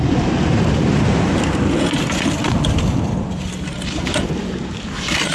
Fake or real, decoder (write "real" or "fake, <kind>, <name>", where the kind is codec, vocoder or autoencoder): fake, vocoder, BigVGAN v2